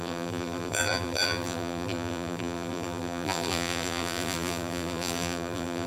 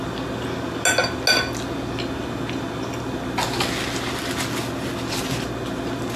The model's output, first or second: first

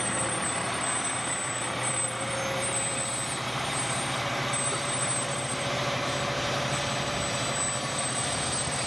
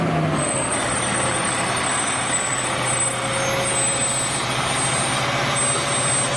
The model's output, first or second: first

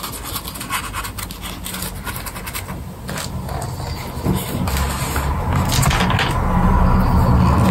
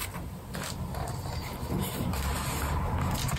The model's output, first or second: second